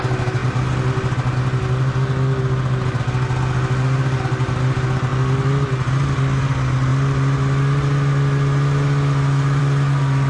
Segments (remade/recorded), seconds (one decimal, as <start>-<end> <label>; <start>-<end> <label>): 0.0-10.3 recorded